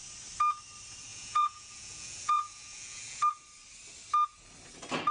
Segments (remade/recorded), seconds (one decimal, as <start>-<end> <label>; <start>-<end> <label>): 0.0-1.1 recorded; 1.1-3.3 remade; 3.3-5.1 recorded